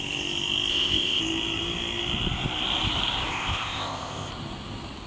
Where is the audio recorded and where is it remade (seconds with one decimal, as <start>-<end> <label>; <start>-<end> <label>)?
0.0-0.7 recorded; 0.7-1.2 remade; 1.2-3.3 recorded; 3.3-4.3 remade; 4.3-5.1 recorded